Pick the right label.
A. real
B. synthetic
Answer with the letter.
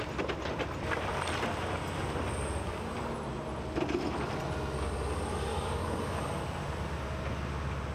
A